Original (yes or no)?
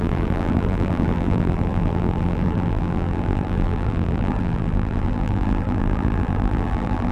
no